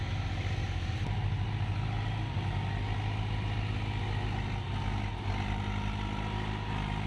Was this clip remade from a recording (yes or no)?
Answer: no